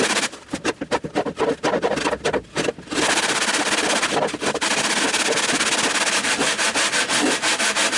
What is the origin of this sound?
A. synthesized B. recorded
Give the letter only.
B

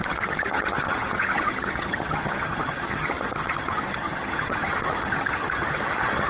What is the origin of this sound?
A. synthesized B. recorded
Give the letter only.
A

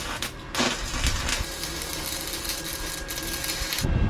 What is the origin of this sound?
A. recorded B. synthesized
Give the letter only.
A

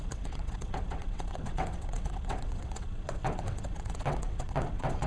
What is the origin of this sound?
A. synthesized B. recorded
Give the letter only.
A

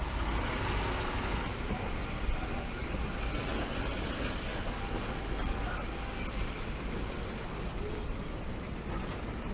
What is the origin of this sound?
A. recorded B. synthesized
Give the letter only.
A